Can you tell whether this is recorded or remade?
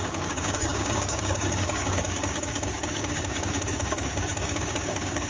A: remade